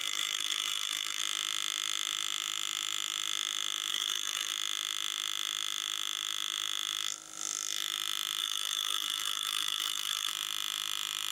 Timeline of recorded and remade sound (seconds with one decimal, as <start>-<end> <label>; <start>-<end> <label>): 0.0-1.2 remade; 1.2-3.9 recorded; 3.9-4.5 remade; 4.5-8.4 recorded; 8.4-10.3 remade; 10.3-11.3 recorded